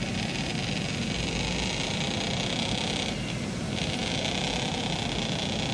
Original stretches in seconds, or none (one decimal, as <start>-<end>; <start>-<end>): 0.0-5.7